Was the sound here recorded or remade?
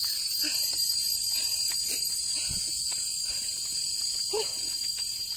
recorded